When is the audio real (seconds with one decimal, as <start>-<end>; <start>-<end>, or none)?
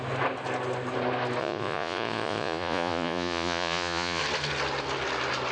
0.0-1.4; 4.2-5.5